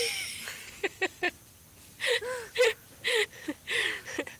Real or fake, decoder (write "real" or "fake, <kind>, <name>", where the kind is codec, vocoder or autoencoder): real